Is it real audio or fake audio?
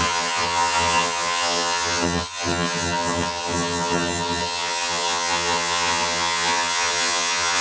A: fake